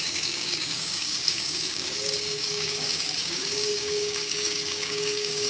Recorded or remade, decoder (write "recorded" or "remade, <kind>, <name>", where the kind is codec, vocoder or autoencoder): remade, codec, DAC